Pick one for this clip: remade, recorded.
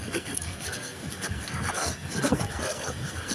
remade